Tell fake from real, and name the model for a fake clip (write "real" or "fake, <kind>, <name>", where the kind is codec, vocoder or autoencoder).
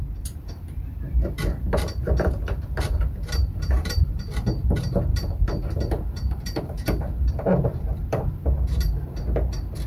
fake, vocoder, BigVGAN v2